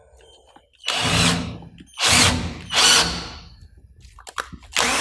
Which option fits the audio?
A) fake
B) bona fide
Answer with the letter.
B